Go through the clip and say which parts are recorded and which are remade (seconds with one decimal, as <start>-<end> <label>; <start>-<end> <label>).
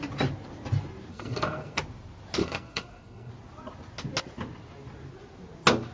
0.0-1.1 recorded; 1.1-1.8 remade; 1.8-2.4 recorded; 2.4-3.3 remade; 3.3-5.9 recorded